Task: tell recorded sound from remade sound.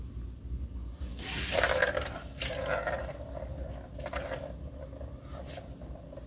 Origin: recorded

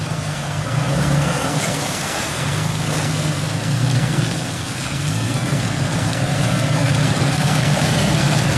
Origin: remade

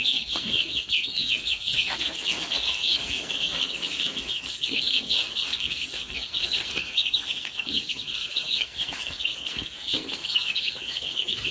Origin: remade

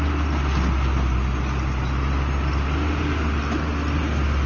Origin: recorded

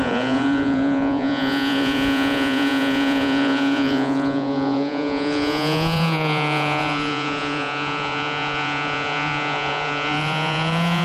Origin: remade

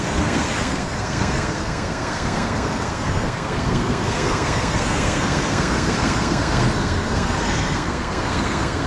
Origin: remade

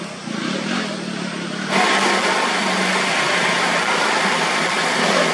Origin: recorded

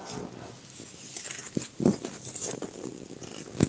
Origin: recorded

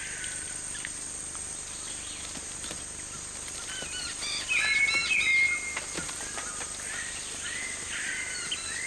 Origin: recorded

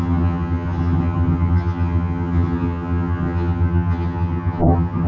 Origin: remade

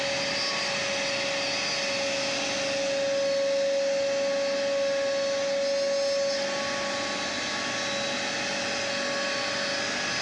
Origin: recorded